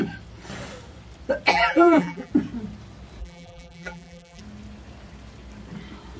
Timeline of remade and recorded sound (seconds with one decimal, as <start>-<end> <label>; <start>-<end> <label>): 0.0-1.5 recorded; 1.5-2.3 remade; 2.3-3.2 recorded; 3.2-4.4 remade; 4.4-6.2 recorded

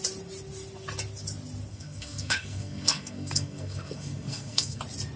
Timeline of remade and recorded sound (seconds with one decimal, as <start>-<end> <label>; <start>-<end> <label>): 0.0-1.7 recorded; 1.7-4.8 remade; 4.8-5.2 recorded

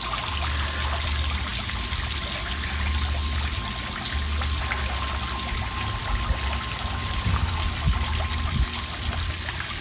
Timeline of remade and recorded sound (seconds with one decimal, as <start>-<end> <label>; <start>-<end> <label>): 0.0-7.0 recorded; 7.0-7.5 remade; 7.5-9.8 recorded

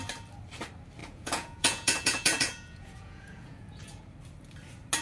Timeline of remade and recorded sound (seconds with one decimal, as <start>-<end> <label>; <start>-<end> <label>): 0.0-1.0 recorded; 1.0-4.0 remade; 4.0-5.0 recorded